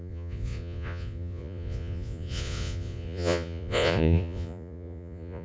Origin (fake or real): fake